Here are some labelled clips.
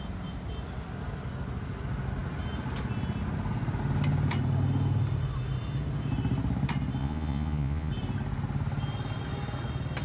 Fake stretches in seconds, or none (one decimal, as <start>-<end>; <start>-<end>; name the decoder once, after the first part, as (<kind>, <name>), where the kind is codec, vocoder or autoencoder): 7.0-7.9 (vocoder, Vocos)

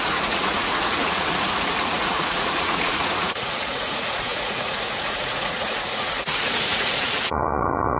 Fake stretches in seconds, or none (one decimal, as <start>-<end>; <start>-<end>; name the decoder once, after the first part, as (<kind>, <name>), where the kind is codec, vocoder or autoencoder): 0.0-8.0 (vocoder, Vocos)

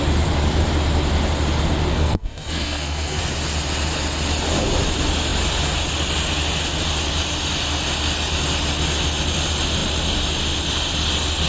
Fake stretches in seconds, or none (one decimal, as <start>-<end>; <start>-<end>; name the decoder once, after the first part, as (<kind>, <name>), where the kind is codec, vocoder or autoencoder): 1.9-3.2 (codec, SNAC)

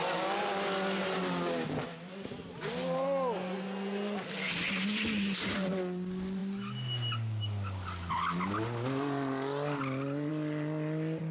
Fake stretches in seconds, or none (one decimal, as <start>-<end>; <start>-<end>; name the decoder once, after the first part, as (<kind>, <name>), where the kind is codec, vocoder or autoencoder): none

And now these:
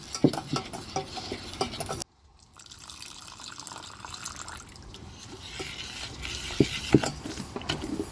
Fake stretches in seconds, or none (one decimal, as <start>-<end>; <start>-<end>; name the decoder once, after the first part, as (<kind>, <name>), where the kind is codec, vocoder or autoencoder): none

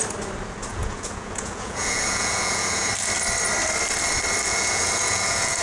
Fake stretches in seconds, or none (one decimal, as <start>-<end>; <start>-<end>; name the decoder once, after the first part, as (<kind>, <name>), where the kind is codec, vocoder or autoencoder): 0.7-2.9 (vocoder, Vocos); 4.5-5.6